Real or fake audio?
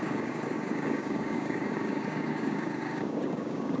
fake